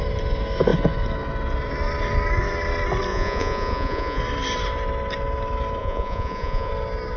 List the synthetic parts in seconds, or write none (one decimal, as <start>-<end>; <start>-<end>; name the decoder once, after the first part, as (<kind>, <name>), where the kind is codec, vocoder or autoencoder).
3.1-4.2 (vocoder, Vocos); 5.8-6.7